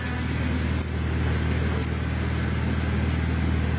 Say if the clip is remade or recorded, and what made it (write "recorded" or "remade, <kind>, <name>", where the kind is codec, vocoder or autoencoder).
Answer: recorded